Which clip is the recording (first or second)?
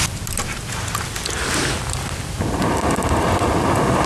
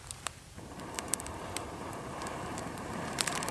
first